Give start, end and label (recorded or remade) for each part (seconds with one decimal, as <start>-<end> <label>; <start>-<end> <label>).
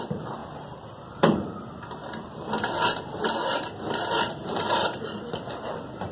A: 0.0-0.4 remade; 0.4-1.2 recorded; 1.2-2.0 remade; 2.0-4.3 recorded; 4.3-6.1 remade